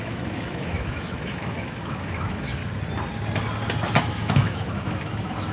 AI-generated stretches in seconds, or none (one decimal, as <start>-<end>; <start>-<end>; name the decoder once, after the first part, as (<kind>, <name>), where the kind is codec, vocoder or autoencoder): 0.0-2.6 (autoencoder, DAC-VAE); 4.0-5.5